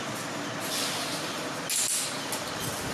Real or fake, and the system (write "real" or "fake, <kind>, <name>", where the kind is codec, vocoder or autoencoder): real